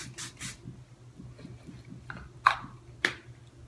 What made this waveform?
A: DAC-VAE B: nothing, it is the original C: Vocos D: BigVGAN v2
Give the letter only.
B